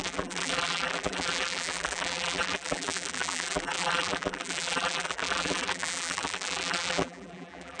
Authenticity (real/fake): fake